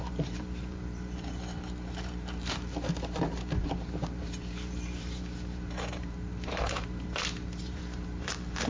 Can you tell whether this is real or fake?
fake